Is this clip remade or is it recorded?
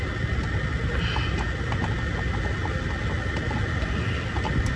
recorded